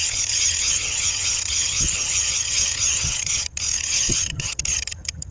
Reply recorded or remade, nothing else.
remade